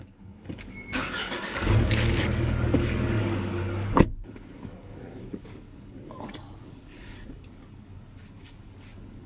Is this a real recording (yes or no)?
no